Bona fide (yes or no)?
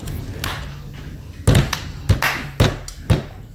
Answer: yes